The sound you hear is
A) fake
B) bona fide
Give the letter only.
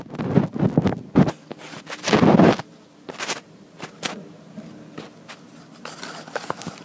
B